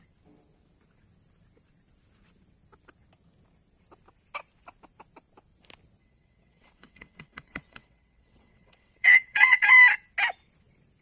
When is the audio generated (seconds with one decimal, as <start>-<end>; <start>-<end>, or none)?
6.0-9.7